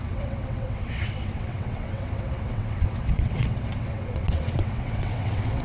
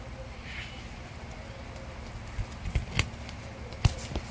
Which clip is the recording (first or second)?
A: second